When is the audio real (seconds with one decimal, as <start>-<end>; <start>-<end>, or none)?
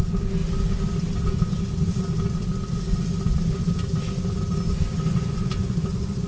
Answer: 0.0-5.1